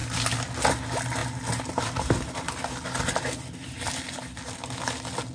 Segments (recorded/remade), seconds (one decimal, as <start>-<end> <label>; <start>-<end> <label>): 0.0-5.3 recorded